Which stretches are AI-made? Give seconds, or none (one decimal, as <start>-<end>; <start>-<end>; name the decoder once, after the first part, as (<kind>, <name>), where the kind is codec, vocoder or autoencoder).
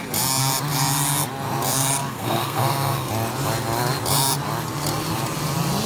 2.0-3.1 (codec, SNAC)